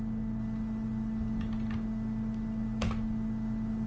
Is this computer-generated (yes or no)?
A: no